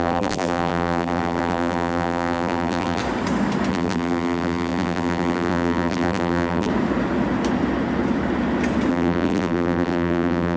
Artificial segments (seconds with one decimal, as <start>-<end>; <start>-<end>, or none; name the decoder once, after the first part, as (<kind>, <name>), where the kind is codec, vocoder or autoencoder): 0.0-3.0 (vocoder, BigVGAN v2); 3.7-6.7; 8.9-10.6